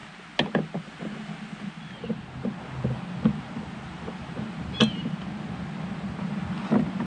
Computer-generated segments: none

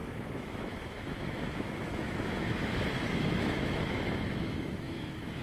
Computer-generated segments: 0.0-5.4 (autoencoder, DAC-VAE)

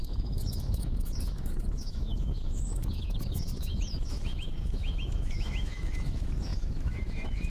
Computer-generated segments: 0.0-7.5 (autoencoder, DAC-VAE)

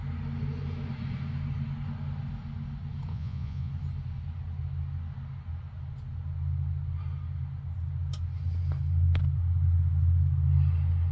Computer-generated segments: 3.1-3.7 (vocoder, Vocos)

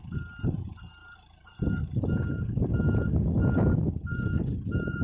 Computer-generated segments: 1.0-2.0 (vocoder, BigVGAN v2); 3.4-5.0